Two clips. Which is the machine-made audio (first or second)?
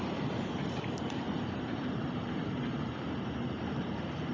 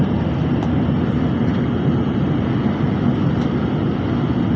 first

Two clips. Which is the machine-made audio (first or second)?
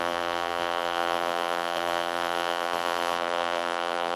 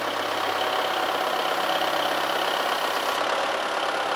first